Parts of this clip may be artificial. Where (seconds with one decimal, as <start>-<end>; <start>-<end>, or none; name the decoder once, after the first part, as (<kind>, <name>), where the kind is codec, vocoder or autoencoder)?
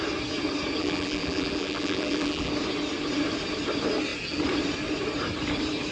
0.8-2.5 (vocoder, BigVGAN v2)